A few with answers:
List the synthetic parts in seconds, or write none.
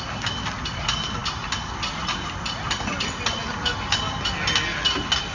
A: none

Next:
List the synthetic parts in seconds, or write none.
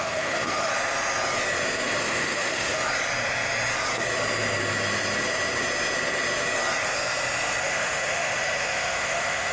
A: 0.0-0.7 (autoencoder, DAC-VAE); 2.0-2.8; 7.6-9.5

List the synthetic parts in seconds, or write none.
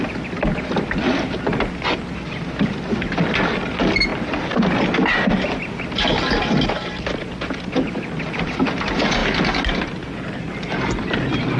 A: none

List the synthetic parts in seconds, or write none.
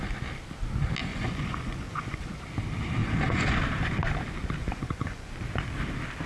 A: 1.1-2.3 (vocoder, Vocos); 3.0-3.6; 4.6-5.3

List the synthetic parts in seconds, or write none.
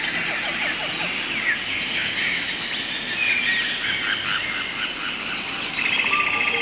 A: 2.2-6.6 (vocoder, BigVGAN v2)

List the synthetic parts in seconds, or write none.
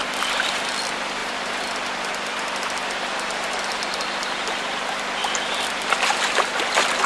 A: 1.2-4.0 (vocoder, BigVGAN v2); 5.2-6.4